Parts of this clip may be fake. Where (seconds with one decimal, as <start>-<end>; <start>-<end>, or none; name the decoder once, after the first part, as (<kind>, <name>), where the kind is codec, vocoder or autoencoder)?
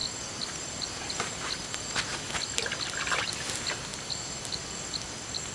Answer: none